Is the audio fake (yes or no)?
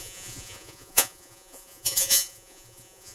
yes